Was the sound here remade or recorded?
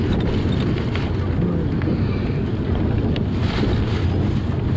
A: recorded